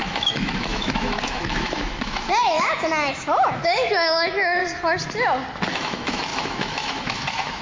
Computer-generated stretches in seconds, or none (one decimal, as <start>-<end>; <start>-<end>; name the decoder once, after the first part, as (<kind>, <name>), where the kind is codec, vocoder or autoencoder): 0.0-4.6 (autoencoder, DAC-VAE); 5.7-7.6